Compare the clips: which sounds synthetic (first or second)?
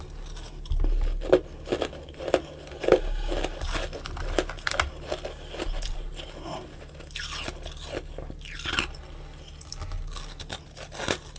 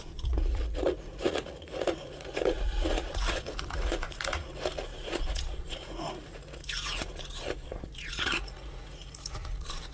second